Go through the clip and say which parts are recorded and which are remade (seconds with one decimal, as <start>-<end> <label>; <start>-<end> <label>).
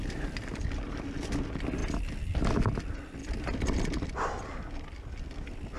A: 0.0-3.2 recorded; 3.2-4.1 remade; 4.1-5.8 recorded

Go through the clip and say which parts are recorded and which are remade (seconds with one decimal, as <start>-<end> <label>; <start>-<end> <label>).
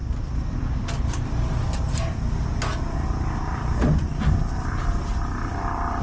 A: 0.0-6.0 remade